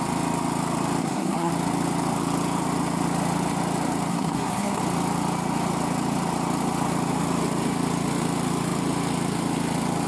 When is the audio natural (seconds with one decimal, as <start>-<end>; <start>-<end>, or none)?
0.0-1.0; 1.5-4.1; 4.8-10.1